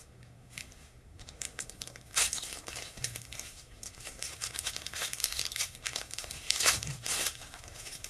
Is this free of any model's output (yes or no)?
no